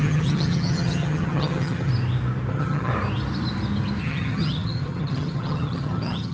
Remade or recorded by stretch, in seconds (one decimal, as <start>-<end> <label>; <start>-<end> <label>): 0.0-1.9 remade; 1.9-2.5 recorded; 2.5-2.9 remade; 2.9-4.0 recorded; 4.0-6.3 remade